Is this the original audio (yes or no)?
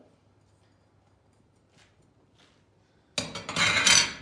yes